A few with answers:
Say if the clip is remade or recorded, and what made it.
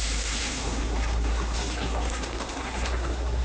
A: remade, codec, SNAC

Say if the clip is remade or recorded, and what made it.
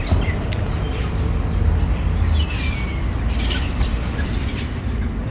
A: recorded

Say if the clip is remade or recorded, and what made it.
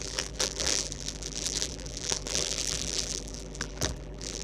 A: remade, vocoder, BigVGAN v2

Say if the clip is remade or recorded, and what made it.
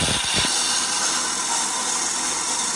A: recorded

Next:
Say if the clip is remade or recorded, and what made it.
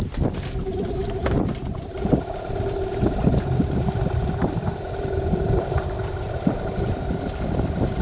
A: remade, vocoder, BigVGAN v2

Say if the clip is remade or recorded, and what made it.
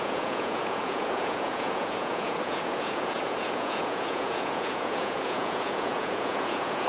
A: remade, vocoder, Vocos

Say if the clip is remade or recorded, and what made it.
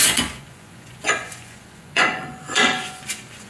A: remade, vocoder, Vocos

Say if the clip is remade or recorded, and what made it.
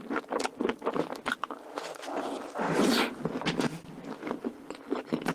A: recorded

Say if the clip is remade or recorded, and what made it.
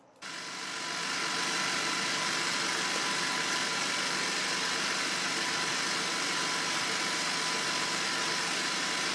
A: recorded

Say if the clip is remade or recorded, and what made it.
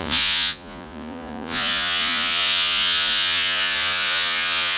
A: remade, vocoder, Vocos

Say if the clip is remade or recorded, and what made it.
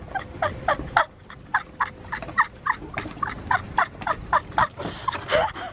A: recorded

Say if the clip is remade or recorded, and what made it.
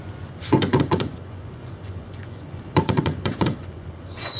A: remade, vocoder, Vocos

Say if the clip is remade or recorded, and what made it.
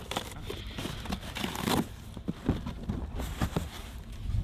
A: remade, vocoder, BigVGAN v2